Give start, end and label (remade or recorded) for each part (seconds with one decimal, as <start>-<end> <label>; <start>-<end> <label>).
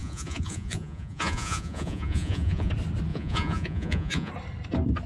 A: 0.0-2.7 remade; 2.7-3.1 recorded; 3.1-4.3 remade; 4.3-5.1 recorded